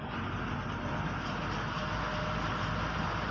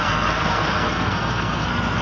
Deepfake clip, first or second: second